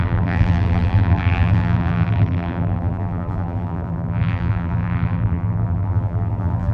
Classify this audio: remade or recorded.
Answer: remade